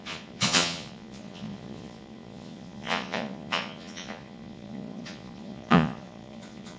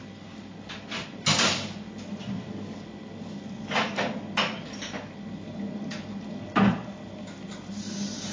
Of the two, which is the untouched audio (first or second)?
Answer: second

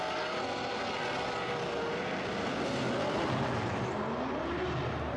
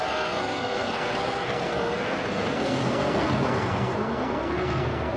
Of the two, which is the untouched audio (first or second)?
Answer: first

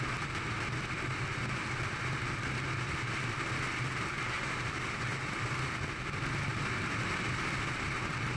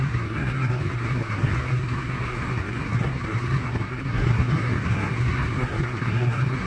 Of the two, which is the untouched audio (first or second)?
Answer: first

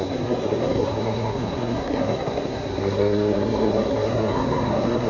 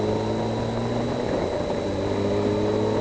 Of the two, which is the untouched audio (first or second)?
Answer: second